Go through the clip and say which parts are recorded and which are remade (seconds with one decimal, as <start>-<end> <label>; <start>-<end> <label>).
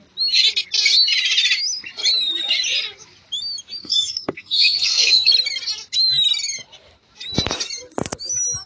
0.0-3.8 recorded; 3.8-5.3 remade; 5.3-8.7 recorded